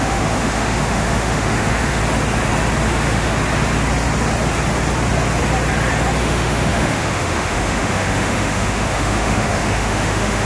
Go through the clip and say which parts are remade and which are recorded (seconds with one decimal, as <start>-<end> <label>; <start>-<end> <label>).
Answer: 0.0-2.0 remade; 2.0-2.9 recorded; 2.9-3.3 remade; 3.3-6.2 recorded; 6.2-10.4 remade